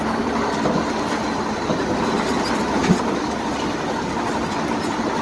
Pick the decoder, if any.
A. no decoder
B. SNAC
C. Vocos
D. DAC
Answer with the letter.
A